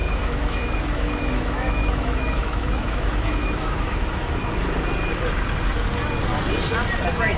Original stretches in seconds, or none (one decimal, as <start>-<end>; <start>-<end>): 4.4-7.4

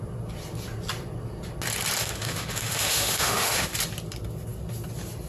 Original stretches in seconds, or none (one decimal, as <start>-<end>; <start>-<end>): 0.0-2.0; 3.7-5.3

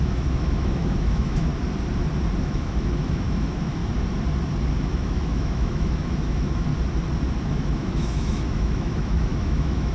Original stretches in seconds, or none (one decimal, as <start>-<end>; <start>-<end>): 1.5-2.4; 3.8-4.8; 6.7-7.4

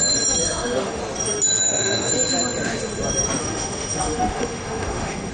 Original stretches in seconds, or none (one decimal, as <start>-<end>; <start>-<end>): 0.0-0.4; 1.0-1.6; 2.1-3.4

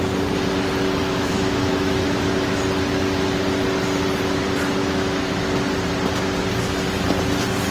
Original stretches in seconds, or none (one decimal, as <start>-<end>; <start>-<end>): 0.0-1.0; 2.5-4.8; 5.5-7.7

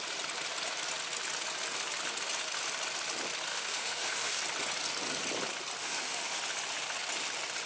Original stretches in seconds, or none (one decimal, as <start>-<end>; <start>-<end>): 0.0-3.5; 4.4-5.8; 6.4-7.7

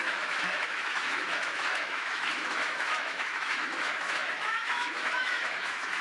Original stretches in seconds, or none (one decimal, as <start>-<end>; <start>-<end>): none